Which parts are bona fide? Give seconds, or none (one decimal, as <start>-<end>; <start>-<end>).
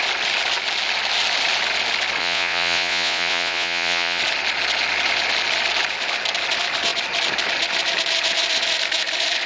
0.0-2.2; 4.2-9.5